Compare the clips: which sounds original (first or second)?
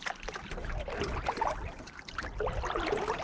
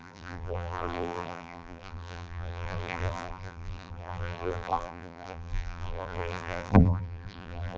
first